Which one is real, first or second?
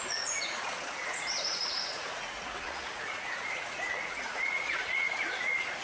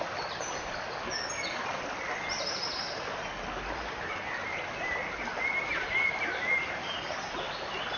second